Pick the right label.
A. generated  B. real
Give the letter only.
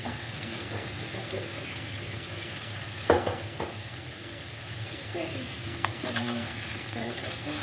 A